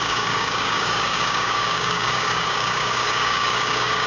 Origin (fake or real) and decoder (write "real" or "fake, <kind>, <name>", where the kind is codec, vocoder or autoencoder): fake, codec, DAC